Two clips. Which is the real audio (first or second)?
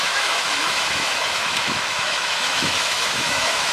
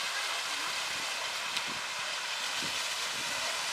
second